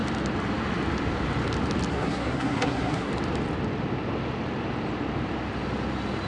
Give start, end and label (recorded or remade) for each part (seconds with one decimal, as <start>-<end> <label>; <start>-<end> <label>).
0.0-1.9 recorded; 1.9-3.1 remade; 3.1-6.3 recorded

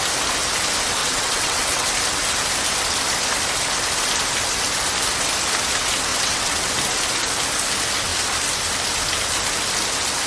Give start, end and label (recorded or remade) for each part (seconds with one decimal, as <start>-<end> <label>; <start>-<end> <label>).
0.0-1.0 recorded; 1.0-1.9 remade; 1.9-6.1 recorded; 6.1-6.7 remade; 6.7-10.3 recorded

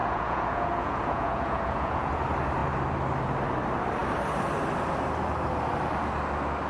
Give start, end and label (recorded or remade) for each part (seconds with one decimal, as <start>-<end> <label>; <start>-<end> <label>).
0.0-2.2 remade; 2.2-6.7 recorded

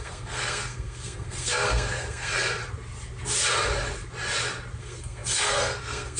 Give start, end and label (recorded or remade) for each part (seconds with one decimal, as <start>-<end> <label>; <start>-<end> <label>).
0.0-2.6 remade; 2.6-4.8 recorded; 4.8-6.2 remade